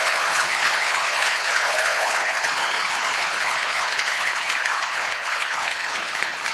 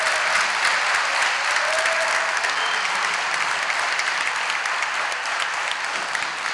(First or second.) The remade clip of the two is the first